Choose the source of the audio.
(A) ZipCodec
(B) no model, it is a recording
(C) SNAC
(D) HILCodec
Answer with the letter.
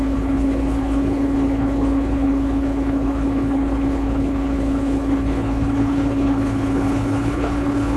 D